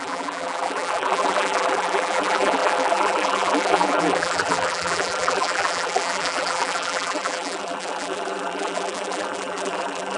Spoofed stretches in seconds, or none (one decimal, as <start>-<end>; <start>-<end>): 0.0-10.2